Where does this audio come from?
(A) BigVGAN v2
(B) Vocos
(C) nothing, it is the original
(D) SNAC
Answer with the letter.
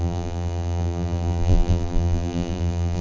A